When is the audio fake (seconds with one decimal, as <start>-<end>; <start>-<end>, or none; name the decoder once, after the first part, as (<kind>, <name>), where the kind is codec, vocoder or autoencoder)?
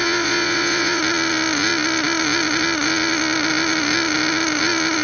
0.0-1.0 (vocoder, Vocos)